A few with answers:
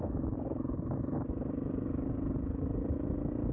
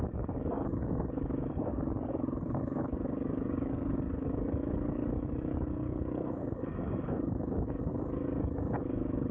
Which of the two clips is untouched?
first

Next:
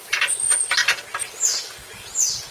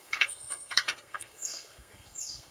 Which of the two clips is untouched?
first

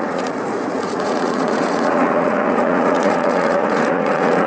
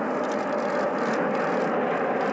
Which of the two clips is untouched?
second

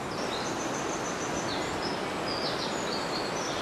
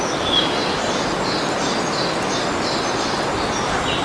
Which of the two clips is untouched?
first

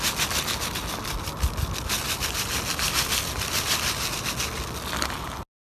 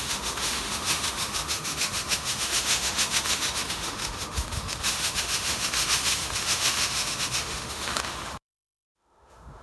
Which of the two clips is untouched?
first